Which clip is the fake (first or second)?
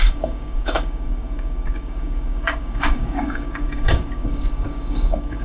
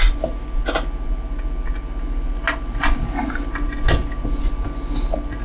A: first